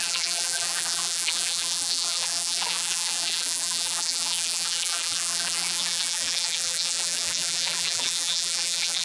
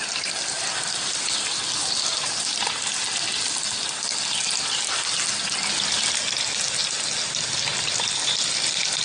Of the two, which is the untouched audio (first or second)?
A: second